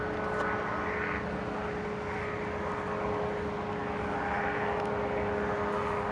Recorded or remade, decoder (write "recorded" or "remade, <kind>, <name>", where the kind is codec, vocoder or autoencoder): recorded